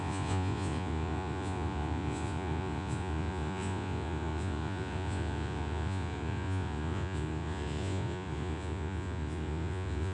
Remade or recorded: remade